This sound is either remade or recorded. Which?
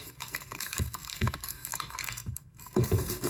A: remade